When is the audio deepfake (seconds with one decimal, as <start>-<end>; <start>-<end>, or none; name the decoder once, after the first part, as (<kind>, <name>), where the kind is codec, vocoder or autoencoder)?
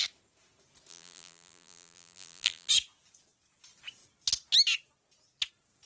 0.9-2.7 (vocoder, BigVGAN v2)